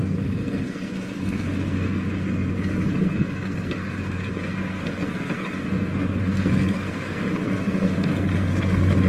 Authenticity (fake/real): fake